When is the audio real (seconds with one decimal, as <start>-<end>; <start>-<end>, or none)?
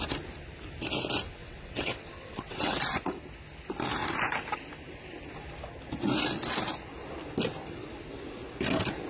0.0-1.4; 2.8-9.1